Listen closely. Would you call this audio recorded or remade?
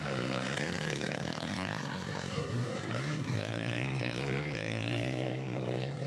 remade